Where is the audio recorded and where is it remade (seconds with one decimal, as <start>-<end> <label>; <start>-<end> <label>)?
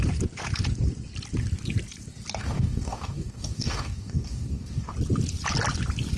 0.0-2.4 recorded; 2.4-4.9 remade; 4.9-6.2 recorded